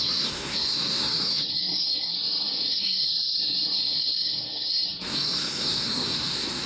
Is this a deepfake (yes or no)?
yes